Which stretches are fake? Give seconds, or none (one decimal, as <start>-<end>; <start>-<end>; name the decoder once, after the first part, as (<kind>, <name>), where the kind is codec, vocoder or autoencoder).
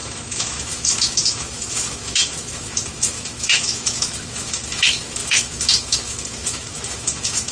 0.0-7.5 (autoencoder, DAC-VAE)